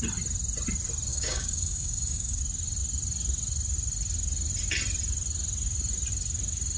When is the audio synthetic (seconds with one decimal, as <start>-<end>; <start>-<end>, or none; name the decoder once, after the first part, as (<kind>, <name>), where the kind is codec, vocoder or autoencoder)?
1.1-2.4 (codec, DAC)